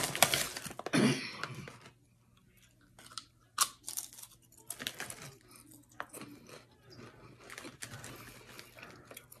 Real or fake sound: real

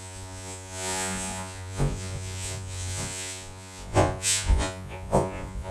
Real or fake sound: fake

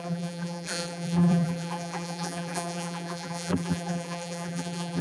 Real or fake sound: fake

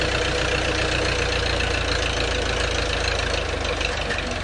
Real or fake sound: real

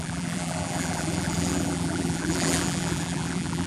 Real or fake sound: fake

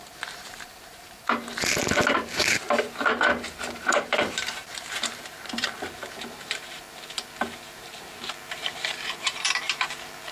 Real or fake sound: fake